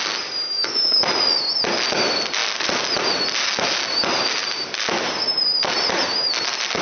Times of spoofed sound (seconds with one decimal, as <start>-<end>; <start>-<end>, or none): 0.4-1.0